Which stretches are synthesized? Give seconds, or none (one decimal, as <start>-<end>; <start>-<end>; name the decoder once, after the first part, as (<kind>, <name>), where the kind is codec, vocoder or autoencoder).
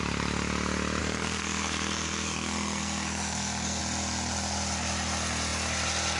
1.0-3.8 (codec, SNAC)